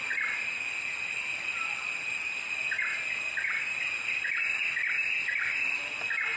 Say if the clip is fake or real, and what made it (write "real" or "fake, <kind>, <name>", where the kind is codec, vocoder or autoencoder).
real